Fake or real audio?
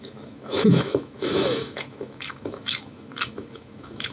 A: fake